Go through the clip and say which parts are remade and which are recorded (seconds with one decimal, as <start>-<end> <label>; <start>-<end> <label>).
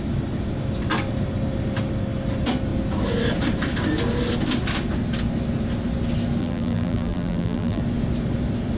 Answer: 0.0-6.4 recorded; 6.4-7.8 remade; 7.8-8.8 recorded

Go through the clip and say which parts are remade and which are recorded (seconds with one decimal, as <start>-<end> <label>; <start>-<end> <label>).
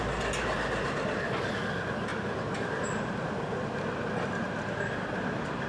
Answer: 0.0-5.7 recorded